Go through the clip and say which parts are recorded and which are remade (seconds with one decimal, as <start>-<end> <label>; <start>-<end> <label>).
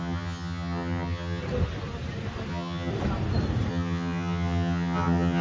0.0-1.4 remade; 1.4-2.5 recorded; 2.5-2.9 remade; 2.9-3.7 recorded; 3.7-5.4 remade